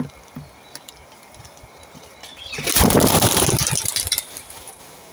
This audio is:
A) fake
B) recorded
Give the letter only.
B